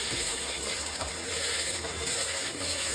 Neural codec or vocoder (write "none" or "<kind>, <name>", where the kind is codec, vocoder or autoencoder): codec, SNAC